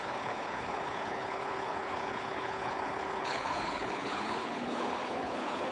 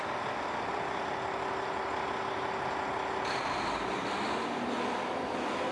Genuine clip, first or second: second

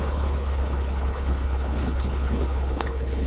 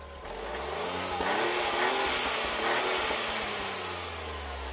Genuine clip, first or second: second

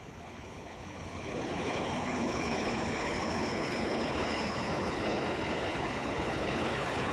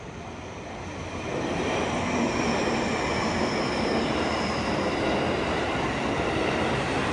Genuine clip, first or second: second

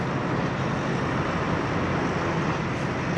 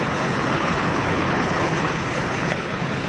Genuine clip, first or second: first